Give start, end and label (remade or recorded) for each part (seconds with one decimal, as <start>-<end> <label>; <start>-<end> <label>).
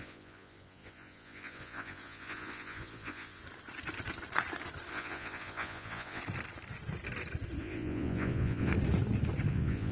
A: 0.0-3.4 remade; 3.4-4.9 recorded; 4.9-6.2 remade; 6.2-7.6 recorded; 7.6-8.7 remade; 8.7-9.5 recorded; 9.5-9.9 remade